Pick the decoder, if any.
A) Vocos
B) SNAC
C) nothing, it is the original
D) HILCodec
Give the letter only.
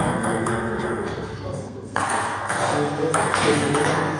B